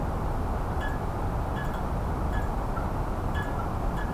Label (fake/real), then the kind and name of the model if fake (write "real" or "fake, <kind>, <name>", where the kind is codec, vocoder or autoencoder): real